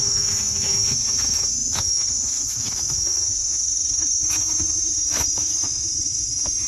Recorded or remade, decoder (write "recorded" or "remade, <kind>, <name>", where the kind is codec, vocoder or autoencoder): remade, autoencoder, DAC-VAE